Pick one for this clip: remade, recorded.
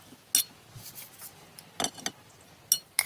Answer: recorded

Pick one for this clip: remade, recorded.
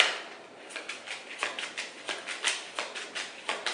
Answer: recorded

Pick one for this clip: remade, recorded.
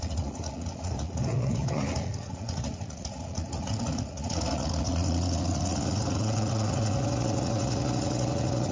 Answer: remade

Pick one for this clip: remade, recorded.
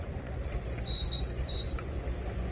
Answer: remade